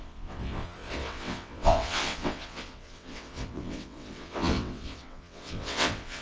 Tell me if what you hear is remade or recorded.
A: remade